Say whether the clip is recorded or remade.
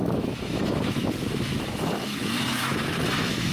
remade